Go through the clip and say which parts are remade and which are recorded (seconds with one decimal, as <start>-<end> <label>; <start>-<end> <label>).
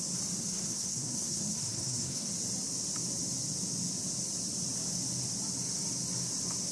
0.0-0.4 recorded; 0.4-2.3 remade; 2.3-6.7 recorded